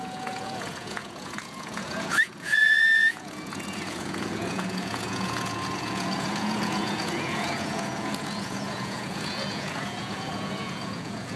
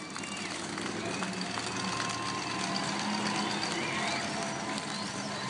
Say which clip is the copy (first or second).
first